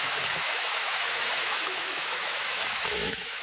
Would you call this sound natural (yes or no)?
no